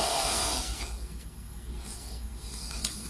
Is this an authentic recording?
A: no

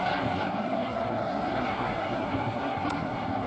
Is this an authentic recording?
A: no